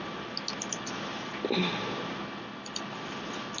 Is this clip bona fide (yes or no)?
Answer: yes